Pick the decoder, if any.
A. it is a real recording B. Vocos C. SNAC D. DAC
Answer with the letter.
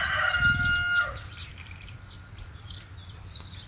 A